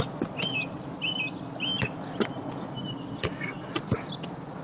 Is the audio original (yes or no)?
yes